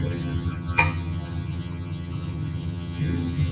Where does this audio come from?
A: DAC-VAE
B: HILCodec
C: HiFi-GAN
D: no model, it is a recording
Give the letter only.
C